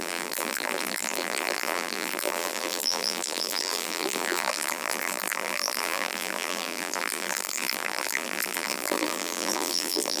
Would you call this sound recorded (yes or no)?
no